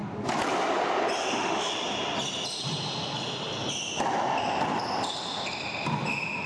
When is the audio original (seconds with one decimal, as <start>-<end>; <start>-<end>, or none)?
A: 0.0-1.2; 1.7-6.5